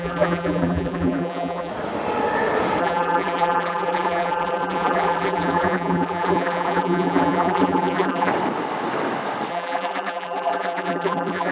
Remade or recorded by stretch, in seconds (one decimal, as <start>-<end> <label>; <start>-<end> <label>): 0.0-1.7 remade; 1.7-2.8 recorded; 2.8-8.3 remade; 8.3-9.5 recorded; 9.5-11.5 remade